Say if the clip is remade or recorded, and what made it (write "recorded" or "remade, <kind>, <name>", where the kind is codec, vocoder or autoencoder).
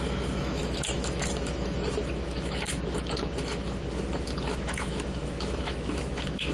remade, autoencoder, DAC-VAE